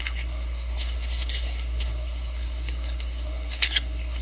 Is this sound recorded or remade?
remade